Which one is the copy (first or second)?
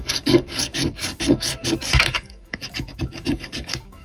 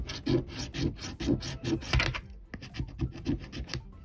first